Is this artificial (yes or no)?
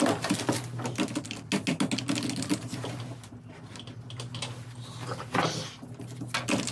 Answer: no